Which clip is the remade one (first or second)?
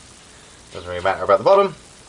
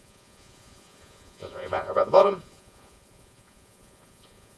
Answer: second